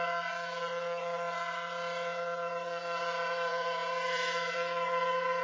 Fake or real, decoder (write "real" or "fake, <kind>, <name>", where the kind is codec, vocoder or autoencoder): fake, vocoder, WaveNeXt